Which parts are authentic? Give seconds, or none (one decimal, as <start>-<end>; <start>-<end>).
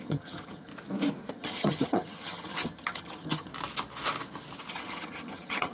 0.7-1.3; 3.5-4.7